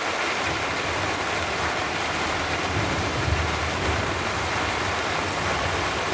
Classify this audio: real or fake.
real